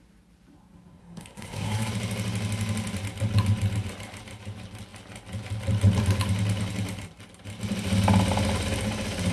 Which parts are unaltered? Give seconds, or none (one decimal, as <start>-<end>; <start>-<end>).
0.0-1.0; 1.9-9.3